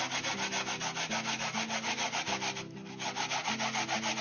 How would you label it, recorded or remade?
recorded